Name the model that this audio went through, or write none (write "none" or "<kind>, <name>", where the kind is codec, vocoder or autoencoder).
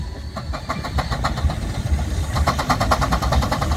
none